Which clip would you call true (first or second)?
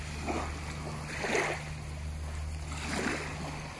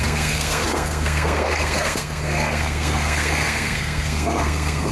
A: first